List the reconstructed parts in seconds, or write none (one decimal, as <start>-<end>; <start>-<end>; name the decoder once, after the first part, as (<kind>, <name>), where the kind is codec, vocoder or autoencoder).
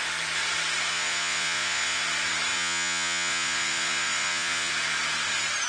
0.9-2.0 (vocoder, Vocos); 2.5-4.7